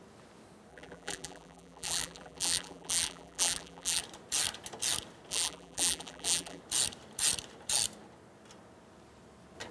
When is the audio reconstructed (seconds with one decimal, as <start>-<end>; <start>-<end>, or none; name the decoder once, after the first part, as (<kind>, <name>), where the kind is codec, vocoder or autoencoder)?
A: 0.7-4.0 (vocoder, BigVGAN v2); 5.3-6.6